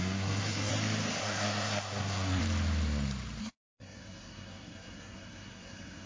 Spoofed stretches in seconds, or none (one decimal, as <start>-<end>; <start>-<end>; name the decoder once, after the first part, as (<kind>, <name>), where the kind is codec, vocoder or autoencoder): 0.0-0.7 (codec, SNAC); 1.2-2.4; 3.4-6.1